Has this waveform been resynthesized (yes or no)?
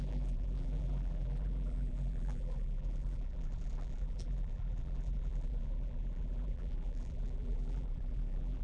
yes